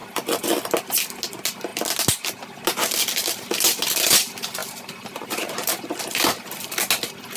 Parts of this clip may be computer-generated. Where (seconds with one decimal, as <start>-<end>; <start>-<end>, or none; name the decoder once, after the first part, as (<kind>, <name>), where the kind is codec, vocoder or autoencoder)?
0.0-0.7 (vocoder, BigVGAN v2); 4.6-6.7